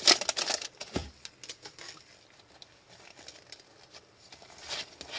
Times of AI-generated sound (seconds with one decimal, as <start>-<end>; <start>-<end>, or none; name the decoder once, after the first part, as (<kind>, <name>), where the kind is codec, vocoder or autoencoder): none